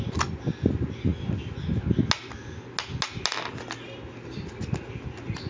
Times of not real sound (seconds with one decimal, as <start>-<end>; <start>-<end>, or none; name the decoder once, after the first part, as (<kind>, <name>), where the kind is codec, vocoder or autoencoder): none